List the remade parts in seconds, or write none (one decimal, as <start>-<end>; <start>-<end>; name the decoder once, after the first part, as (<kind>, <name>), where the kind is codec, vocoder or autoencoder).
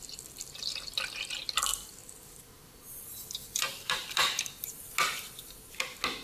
1.7-4.6 (vocoder, BigVGAN v2)